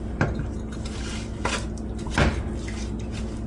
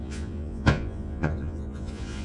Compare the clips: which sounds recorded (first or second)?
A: first